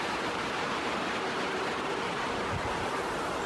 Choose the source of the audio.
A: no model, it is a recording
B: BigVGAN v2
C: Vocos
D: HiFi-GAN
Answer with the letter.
B